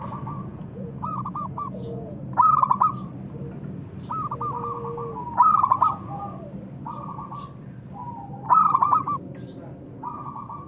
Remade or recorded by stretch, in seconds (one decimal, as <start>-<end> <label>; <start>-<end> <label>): 0.0-0.5 recorded; 0.5-2.2 remade; 2.2-5.4 recorded; 5.4-6.4 remade; 6.4-10.7 recorded